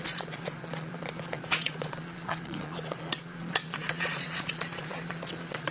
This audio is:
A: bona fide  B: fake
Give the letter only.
B